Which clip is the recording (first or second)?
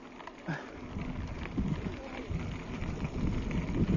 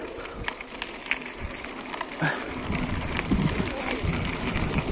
first